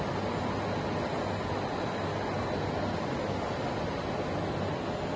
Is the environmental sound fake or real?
real